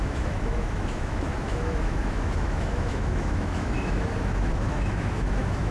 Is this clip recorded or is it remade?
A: remade